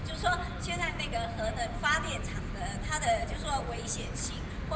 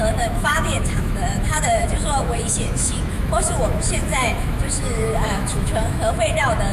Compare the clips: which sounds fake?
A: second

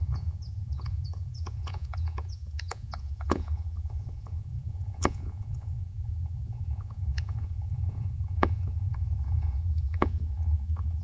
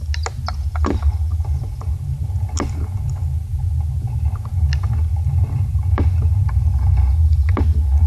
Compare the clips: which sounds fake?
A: first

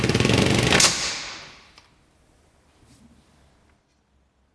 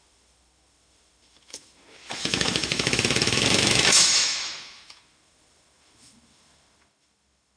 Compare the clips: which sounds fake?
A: second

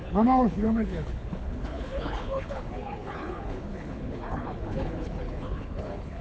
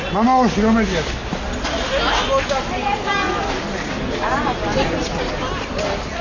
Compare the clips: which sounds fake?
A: first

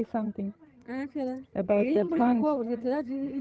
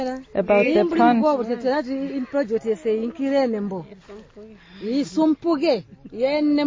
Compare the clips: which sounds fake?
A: first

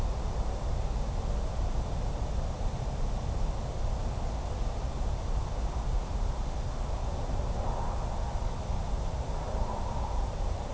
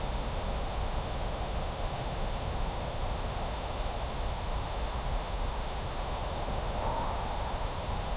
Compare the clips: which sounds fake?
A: second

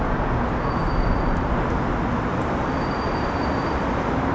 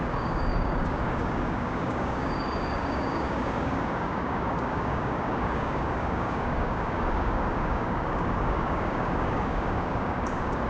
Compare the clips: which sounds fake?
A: second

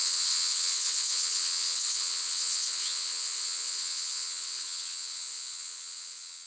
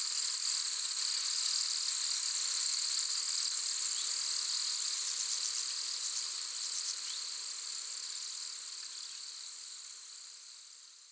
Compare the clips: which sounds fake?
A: first